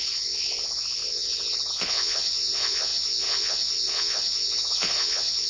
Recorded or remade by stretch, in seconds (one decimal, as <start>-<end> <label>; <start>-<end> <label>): 0.0-5.5 remade